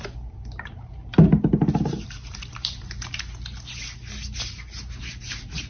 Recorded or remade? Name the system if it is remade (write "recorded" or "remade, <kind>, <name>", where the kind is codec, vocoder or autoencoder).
recorded